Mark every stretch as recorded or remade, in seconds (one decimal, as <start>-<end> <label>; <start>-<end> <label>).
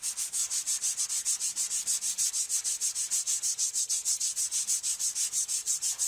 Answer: 0.0-0.4 recorded; 0.4-1.0 remade; 1.0-6.1 recorded